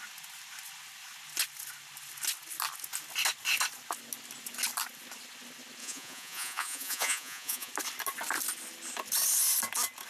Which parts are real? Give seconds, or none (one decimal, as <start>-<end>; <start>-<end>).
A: 0.0-5.8; 7.7-10.1